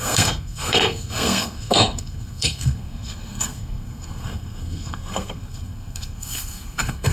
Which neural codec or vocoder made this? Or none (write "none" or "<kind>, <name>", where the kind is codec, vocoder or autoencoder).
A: codec, SNAC